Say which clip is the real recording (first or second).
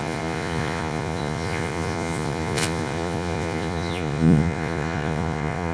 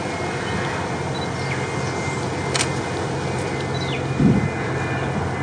second